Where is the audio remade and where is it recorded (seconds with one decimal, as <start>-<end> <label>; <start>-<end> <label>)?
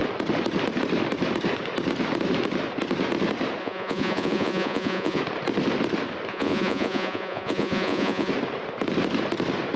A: 0.0-3.6 recorded; 3.6-5.2 remade; 5.2-6.3 recorded; 6.3-8.3 remade; 8.3-9.8 recorded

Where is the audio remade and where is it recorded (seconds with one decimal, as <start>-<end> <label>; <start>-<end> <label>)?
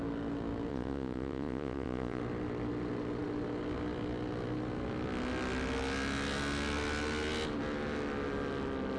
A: 0.0-0.7 recorded; 0.7-2.2 remade; 2.2-9.0 recorded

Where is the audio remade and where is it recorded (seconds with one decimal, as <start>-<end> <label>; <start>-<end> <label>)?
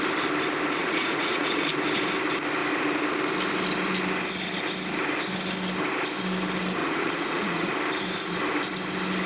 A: 0.0-0.8 recorded; 0.8-1.7 remade; 1.7-6.8 recorded; 6.8-7.7 remade; 7.7-9.3 recorded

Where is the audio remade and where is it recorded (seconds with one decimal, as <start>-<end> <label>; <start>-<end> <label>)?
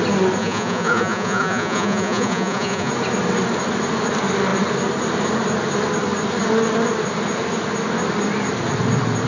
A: 0.0-0.4 recorded; 0.4-2.9 remade; 2.9-9.3 recorded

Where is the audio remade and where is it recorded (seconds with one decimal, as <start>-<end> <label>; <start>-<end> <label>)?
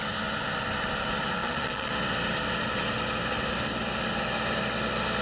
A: 0.0-1.4 recorded; 1.4-1.9 remade; 1.9-5.2 recorded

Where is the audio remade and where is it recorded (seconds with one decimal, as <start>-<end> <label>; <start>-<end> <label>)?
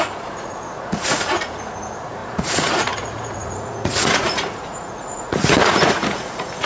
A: 0.0-6.7 remade